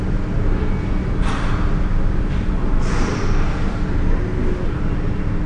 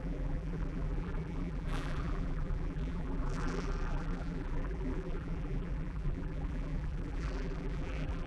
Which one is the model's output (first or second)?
second